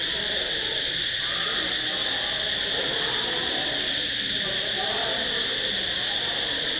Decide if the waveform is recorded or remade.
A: recorded